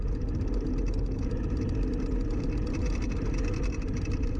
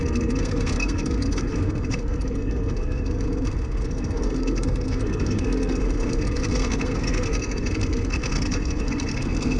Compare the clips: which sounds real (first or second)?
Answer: first